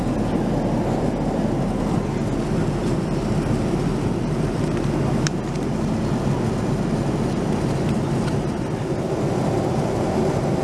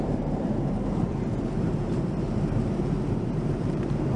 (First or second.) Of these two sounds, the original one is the first